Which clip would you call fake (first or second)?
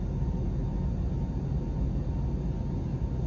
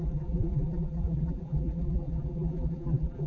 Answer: second